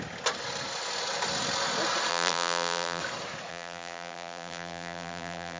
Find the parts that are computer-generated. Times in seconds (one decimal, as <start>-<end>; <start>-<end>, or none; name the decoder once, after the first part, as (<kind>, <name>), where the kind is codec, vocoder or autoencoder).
2.1-3.0 (vocoder, BigVGAN v2); 3.5-5.6